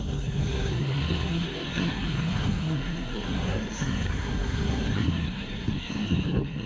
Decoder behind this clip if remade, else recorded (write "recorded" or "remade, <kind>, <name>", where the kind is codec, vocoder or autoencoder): remade, codec, SNAC